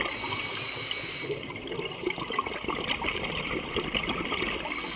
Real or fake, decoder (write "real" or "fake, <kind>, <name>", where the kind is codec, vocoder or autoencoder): real